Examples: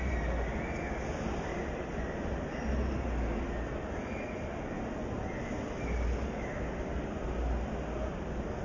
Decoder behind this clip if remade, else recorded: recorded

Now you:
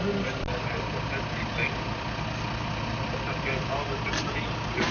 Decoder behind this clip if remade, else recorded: recorded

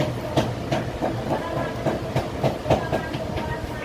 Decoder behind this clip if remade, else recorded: recorded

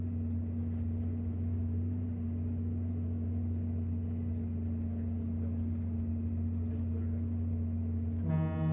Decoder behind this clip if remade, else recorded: recorded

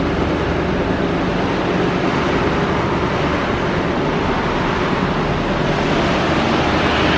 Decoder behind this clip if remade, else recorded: recorded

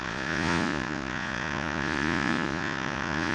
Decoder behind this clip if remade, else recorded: remade, vocoder, Vocos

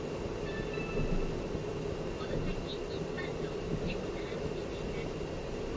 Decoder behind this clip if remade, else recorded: recorded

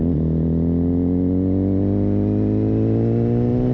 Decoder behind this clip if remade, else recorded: recorded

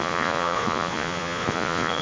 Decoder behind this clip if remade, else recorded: remade, vocoder, Vocos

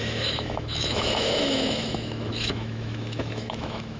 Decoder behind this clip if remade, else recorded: remade, autoencoder, DAC-VAE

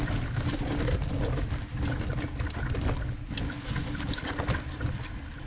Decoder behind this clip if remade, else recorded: recorded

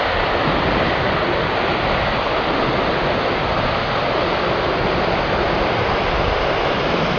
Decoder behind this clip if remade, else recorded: recorded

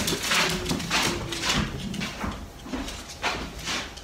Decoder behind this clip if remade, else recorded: recorded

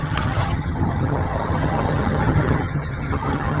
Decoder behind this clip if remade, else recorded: remade, vocoder, HiFi-GAN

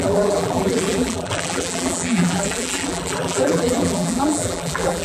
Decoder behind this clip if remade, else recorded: remade, vocoder, BigVGAN v2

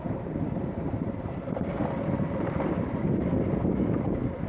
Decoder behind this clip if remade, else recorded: remade, vocoder, BigVGAN v2